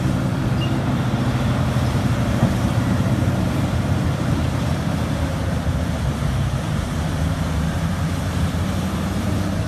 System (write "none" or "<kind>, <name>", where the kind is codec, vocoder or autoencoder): vocoder, BigVGAN v2